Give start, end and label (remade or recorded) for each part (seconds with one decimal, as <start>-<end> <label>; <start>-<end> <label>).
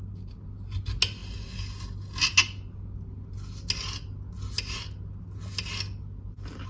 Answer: 0.0-6.7 recorded